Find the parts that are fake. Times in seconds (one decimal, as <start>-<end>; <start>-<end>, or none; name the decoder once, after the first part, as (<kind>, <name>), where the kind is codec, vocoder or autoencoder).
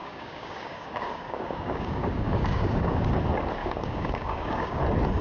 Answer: 0.0-3.1 (codec, DAC); 3.6-4.8